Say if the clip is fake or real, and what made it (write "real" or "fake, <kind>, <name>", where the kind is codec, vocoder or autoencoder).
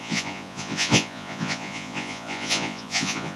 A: fake, vocoder, Vocos